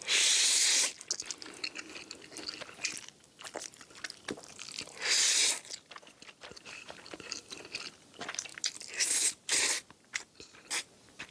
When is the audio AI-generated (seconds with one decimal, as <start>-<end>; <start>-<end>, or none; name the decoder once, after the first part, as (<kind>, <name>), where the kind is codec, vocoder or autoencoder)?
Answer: 6.5-7.6 (vocoder, BigVGAN v2)

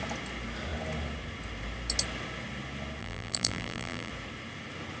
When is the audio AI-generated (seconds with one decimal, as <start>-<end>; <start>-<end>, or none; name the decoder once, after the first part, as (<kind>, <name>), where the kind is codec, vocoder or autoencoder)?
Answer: 3.0-4.1 (vocoder, BigVGAN v2)